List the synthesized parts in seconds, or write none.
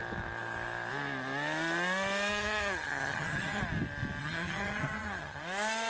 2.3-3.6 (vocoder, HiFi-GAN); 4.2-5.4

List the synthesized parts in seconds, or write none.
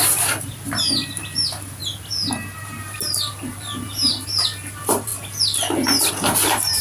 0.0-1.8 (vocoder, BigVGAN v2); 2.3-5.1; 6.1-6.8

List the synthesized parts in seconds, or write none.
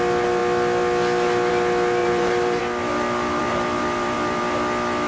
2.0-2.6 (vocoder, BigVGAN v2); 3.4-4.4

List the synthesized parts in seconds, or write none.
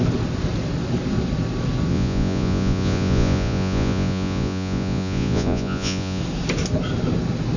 1.9-6.2 (vocoder, Vocos)